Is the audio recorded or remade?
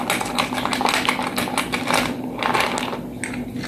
recorded